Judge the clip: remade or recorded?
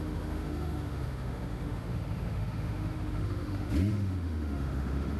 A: remade